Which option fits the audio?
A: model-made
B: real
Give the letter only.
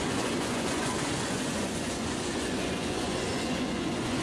A